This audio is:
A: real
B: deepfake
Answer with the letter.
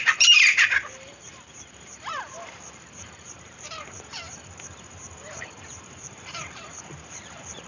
B